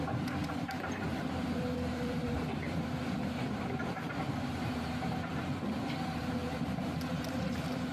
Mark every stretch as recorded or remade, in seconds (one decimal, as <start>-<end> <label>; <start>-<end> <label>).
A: 0.0-7.9 remade

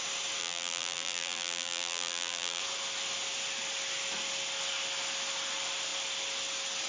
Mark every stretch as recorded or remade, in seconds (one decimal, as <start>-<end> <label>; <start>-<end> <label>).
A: 0.0-0.4 recorded; 0.4-2.6 remade; 2.6-6.9 recorded

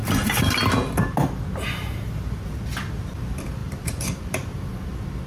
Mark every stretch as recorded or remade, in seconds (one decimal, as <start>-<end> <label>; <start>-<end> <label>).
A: 0.0-0.6 remade; 0.6-3.6 recorded; 3.6-4.2 remade; 4.2-5.3 recorded

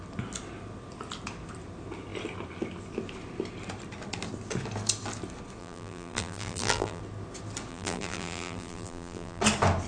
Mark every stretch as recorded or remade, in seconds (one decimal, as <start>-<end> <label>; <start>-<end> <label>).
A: 0.0-5.6 recorded; 5.6-7.0 remade; 7.0-7.7 recorded; 7.7-9.4 remade; 9.4-9.9 recorded

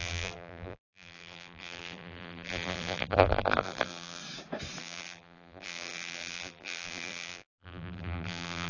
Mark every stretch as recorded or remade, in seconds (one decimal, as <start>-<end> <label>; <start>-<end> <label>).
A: 0.0-4.2 remade; 4.2-4.8 recorded; 4.8-8.7 remade

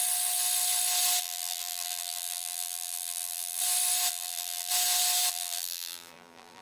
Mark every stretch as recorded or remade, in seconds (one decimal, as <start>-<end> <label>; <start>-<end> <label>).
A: 0.0-1.2 recorded; 1.2-3.6 remade; 3.6-4.1 recorded; 4.1-4.7 remade; 4.7-5.3 recorded; 5.3-6.6 remade

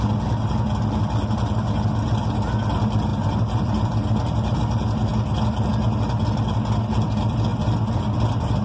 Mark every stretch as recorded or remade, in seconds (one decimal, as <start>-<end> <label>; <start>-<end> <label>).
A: 0.0-3.1 recorded; 3.1-4.6 remade; 4.6-7.5 recorded; 7.5-8.6 remade

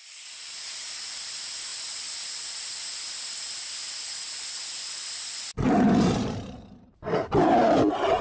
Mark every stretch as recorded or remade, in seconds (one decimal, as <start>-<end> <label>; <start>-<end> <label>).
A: 0.0-1.7 remade; 1.7-5.4 recorded; 5.4-8.2 remade